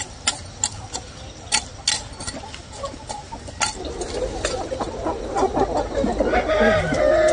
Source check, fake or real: real